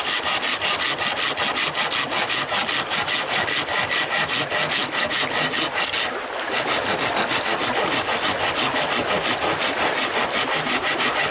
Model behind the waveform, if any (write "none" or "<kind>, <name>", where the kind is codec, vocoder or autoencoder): none